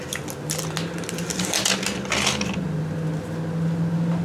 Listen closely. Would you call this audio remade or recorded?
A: recorded